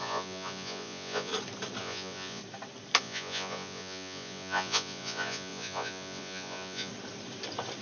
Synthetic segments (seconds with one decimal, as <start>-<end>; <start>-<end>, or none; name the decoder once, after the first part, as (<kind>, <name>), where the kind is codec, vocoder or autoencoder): 0.0-1.3 (vocoder, Vocos); 1.8-2.4; 3.0-6.9